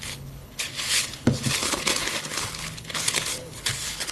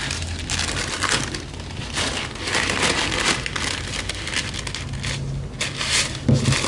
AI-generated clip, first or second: first